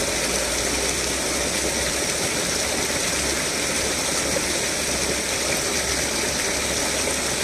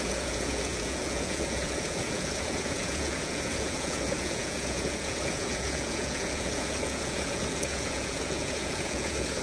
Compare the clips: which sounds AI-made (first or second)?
second